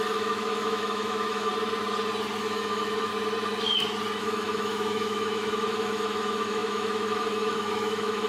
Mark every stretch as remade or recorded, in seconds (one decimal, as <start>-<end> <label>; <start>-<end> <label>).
0.0-1.5 remade; 1.5-2.4 recorded; 2.4-3.1 remade; 3.1-4.2 recorded; 4.2-8.3 remade